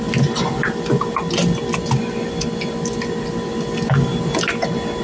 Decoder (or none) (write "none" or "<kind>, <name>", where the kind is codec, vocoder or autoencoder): none